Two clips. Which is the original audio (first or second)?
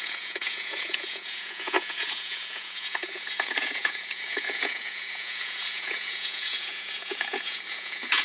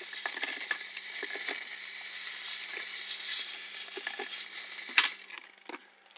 second